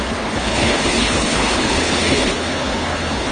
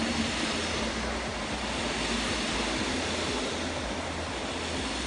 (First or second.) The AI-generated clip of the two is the first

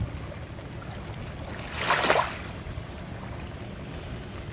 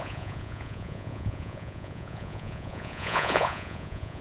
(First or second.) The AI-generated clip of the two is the second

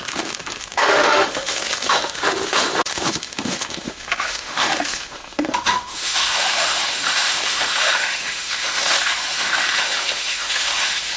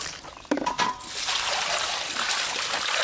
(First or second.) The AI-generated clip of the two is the first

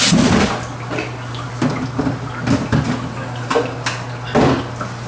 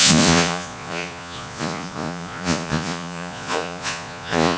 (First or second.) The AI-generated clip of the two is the second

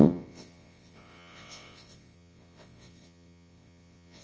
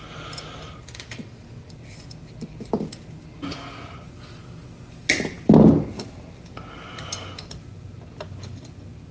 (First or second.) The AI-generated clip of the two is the first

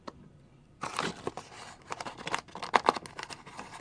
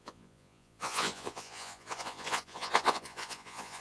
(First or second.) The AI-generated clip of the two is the second